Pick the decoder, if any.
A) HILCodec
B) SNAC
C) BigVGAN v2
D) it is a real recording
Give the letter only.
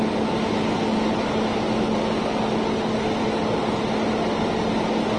D